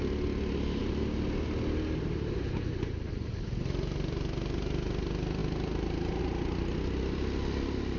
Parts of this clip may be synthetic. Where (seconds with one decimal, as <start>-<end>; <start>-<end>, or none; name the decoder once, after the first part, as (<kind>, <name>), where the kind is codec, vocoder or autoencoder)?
none